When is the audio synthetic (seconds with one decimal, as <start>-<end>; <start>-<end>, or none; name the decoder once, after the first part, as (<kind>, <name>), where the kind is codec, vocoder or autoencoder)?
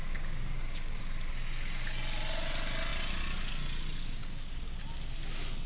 0.0-1.0 (codec, DAC); 4.2-4.8